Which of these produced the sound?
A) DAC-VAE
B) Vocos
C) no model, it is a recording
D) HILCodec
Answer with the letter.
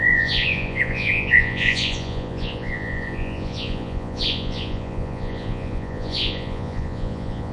B